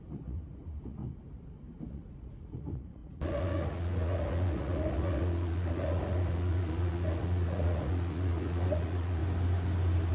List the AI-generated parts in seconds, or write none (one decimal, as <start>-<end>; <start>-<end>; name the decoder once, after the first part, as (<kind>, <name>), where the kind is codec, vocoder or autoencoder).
0.0-1.0 (vocoder, Vocos); 1.9-9.2